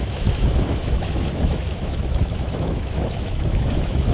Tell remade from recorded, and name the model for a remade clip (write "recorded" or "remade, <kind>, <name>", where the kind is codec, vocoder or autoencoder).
remade, autoencoder, DAC-VAE